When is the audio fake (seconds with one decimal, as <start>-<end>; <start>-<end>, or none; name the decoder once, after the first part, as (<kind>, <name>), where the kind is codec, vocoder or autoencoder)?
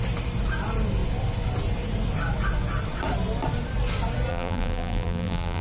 4.3-5.6 (vocoder, BigVGAN v2)